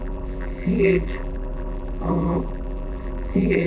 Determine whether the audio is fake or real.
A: fake